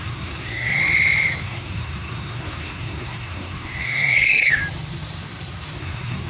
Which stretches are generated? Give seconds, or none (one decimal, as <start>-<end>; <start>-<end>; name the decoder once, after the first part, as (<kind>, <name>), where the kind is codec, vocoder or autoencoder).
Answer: 0.0-0.8 (codec, SNAC); 1.4-4.6; 5.8-6.3